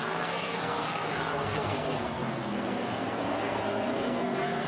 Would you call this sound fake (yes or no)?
yes